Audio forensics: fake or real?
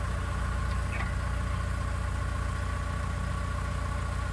real